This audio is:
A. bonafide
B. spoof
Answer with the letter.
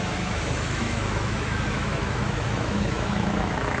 B